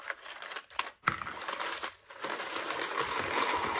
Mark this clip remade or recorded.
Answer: recorded